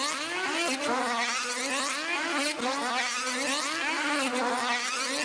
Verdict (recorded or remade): recorded